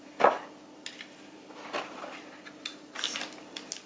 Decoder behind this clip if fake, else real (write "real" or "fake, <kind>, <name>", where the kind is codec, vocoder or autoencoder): real